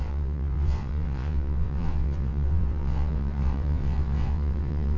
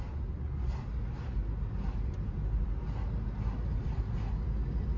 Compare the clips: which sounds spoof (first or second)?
first